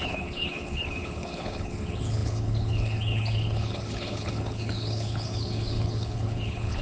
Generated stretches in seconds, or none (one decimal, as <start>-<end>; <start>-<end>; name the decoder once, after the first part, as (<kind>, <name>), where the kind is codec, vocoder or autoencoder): 0.0-6.8 (codec, HILCodec)